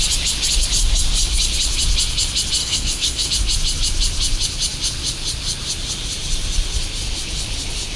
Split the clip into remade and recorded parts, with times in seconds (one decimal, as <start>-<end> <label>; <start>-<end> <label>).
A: 0.0-2.6 recorded; 2.6-3.3 remade; 3.3-8.0 recorded